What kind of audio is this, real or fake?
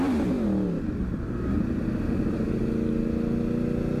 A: real